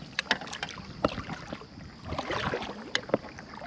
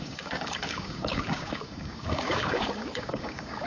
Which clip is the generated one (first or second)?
second